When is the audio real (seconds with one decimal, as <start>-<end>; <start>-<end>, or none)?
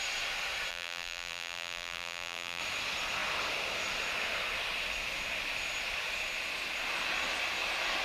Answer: 0.0-0.7; 2.6-8.0